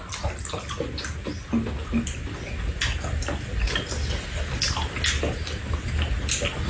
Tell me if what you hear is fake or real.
real